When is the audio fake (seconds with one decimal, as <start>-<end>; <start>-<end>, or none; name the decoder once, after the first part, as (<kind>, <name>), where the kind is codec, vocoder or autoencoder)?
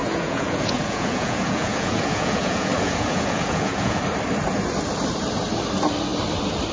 0.0-4.0 (vocoder, Vocos)